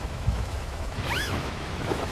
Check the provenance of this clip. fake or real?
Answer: fake